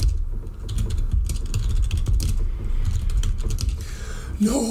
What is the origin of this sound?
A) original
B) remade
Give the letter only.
A